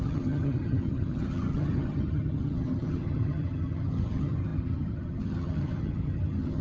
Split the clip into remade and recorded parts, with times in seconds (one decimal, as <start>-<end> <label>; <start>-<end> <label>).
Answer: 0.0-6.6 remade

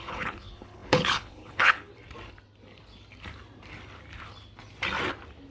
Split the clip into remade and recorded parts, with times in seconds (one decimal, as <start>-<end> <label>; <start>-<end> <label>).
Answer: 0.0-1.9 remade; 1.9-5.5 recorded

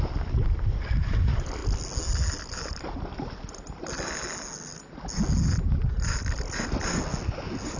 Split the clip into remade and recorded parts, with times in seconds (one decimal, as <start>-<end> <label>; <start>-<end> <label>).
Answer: 0.0-7.8 recorded

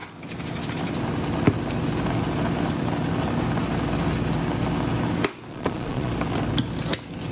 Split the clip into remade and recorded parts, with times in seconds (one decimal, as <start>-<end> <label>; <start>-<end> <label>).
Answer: 0.0-5.5 recorded; 5.5-6.1 remade; 6.1-7.3 recorded

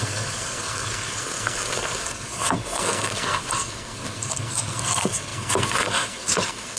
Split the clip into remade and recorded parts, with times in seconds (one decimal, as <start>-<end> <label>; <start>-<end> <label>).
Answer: 0.0-6.8 remade